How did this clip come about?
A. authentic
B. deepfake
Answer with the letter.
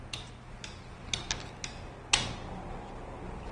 A